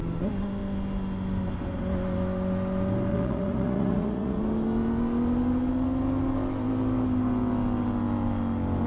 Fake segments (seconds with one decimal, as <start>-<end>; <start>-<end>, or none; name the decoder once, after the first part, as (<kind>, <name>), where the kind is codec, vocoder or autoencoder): 3.1-4.4 (vocoder, Vocos)